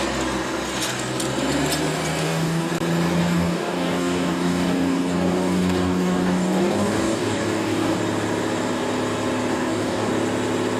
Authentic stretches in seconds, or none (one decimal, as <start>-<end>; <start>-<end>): 0.0-2.2; 2.7-3.2; 8.0-9.5; 10.1-10.8